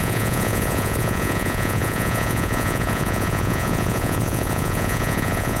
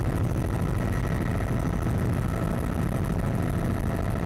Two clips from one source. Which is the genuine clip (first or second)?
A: second